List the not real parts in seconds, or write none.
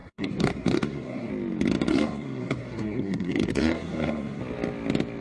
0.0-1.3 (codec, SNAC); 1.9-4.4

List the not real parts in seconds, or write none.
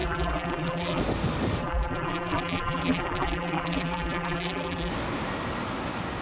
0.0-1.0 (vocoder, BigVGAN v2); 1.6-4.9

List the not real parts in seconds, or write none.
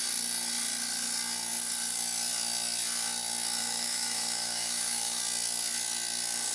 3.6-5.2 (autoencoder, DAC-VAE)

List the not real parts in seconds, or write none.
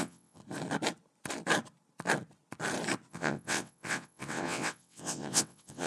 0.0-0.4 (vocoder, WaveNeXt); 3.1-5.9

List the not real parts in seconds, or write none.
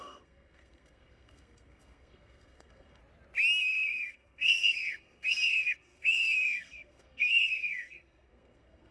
0.0-3.0 (codec, SNAC); 3.6-8.9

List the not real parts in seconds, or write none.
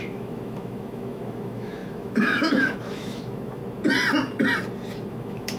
0.0-3.6 (autoencoder, DAC-VAE); 5.1-5.6